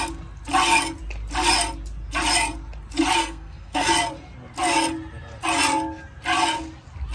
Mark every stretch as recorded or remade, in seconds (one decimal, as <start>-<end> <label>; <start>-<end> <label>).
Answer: 0.0-3.2 recorded; 3.2-3.9 remade; 3.9-7.1 recorded